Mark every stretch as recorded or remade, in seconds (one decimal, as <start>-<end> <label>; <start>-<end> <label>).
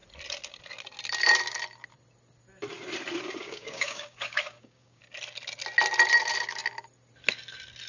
0.0-3.4 recorded; 3.4-5.0 remade; 5.0-7.9 recorded